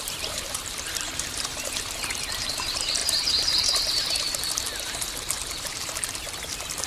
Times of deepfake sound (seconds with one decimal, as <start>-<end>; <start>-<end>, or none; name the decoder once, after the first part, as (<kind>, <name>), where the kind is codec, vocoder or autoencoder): 0.0-6.9 (vocoder, BigVGAN v2)